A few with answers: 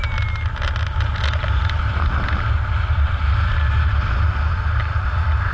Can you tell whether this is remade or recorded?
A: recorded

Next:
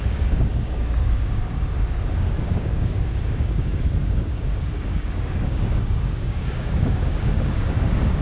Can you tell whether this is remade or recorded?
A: remade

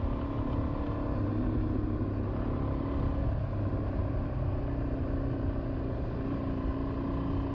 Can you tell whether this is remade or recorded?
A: recorded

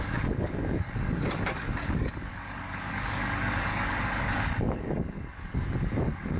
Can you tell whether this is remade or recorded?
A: remade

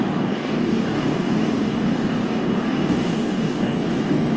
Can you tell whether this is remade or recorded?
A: remade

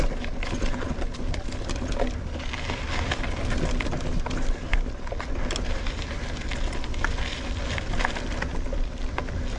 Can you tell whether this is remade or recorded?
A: recorded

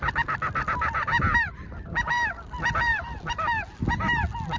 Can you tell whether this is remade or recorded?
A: recorded